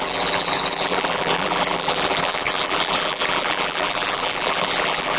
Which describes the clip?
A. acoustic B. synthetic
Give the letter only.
B